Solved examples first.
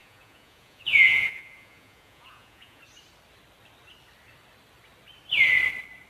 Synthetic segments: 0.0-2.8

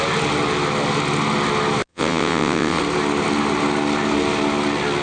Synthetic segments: 1.9-2.8

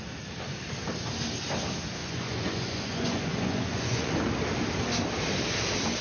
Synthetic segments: 2.0-4.1

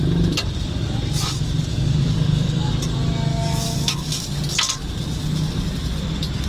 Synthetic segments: 1.7-2.7; 3.3-4.1

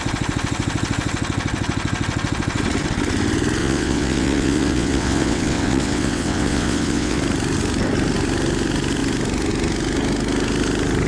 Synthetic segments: 3.6-7.2

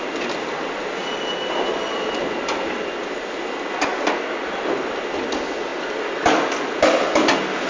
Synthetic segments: none

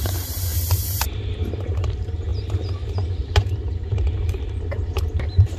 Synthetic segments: 0.0-0.5; 1.0-5.6

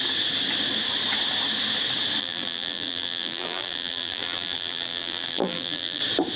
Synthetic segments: 2.2-6.0